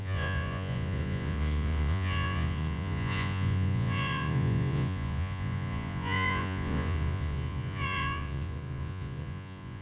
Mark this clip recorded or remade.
remade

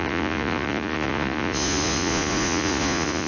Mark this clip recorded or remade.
remade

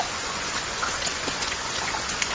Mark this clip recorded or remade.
remade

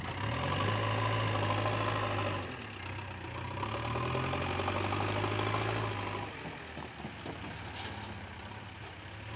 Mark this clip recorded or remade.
recorded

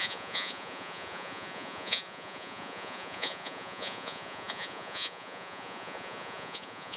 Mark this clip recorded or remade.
remade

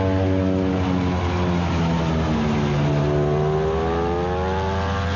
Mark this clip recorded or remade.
recorded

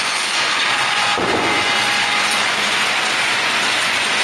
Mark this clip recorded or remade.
remade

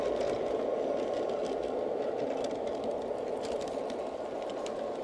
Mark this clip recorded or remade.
recorded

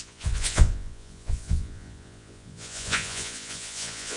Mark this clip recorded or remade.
remade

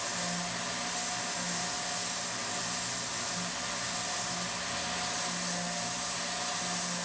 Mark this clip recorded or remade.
recorded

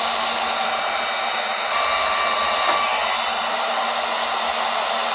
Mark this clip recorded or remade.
recorded